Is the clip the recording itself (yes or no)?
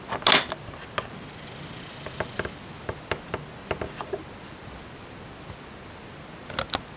yes